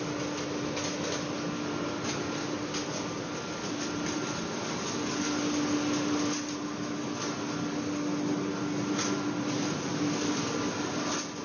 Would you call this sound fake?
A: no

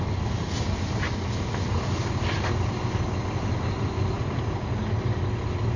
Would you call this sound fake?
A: no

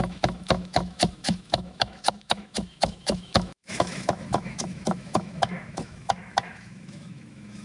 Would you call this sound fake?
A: yes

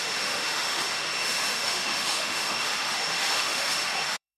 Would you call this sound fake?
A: yes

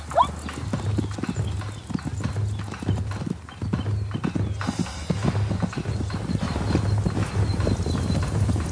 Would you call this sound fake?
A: no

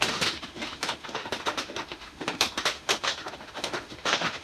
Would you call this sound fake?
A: yes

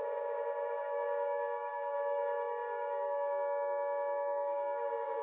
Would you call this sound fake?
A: yes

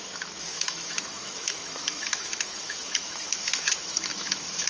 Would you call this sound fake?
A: yes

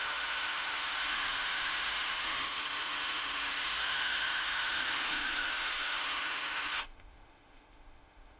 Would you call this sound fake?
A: yes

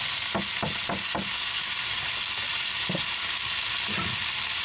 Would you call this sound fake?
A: no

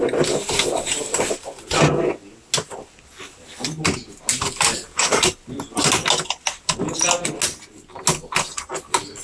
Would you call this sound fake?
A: no